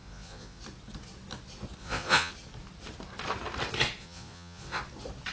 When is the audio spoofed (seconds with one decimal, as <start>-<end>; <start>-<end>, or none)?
0.0-0.6; 1.8-2.3; 4.0-4.8